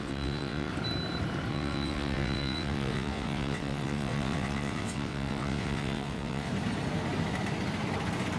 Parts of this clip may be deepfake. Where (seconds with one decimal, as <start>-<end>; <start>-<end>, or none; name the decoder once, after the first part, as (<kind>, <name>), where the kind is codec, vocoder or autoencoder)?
0.0-0.7 (vocoder, WaveNeXt); 1.5-6.5